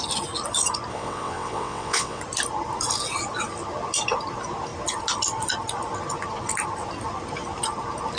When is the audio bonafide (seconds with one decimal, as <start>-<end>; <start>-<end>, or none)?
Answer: 0.0-0.9; 2.2-8.2

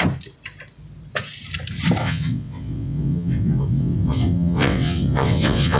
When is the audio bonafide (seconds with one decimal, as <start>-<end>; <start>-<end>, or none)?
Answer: 0.0-2.0

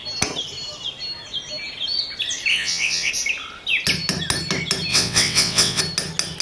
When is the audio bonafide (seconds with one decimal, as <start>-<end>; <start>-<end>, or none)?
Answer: 0.0-2.5; 3.1-4.9; 5.8-6.4

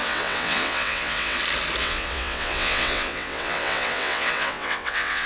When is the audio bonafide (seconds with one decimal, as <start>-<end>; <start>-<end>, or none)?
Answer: 1.4-1.8

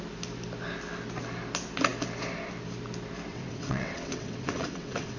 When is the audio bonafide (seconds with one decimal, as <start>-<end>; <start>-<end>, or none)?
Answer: 0.0-3.3

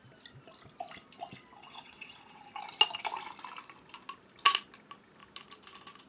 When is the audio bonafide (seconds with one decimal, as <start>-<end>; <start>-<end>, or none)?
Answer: 0.0-1.5; 2.4-6.1

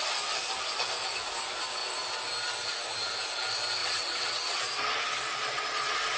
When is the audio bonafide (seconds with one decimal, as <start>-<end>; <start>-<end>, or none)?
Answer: 0.0-3.8; 4.6-6.2